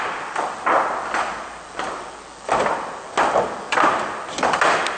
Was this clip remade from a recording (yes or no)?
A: no